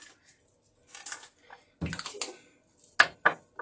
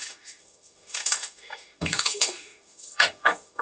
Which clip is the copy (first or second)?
second